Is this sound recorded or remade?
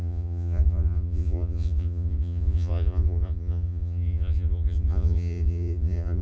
remade